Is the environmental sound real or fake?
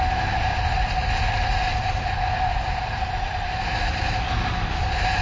real